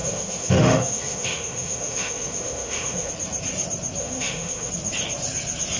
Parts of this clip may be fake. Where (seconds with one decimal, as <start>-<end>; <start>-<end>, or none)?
0.0-3.1; 4.0-4.7